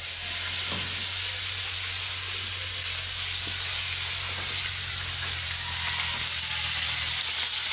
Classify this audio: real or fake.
real